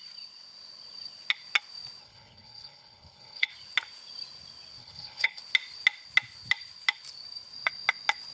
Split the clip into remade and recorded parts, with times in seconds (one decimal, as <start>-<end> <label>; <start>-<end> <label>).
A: 0.0-2.0 recorded; 2.0-3.5 remade; 3.5-4.8 recorded; 4.8-5.4 remade; 5.4-8.3 recorded